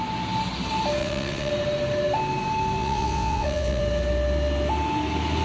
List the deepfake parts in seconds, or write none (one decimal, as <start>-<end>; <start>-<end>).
1.0-1.5; 2.8-3.8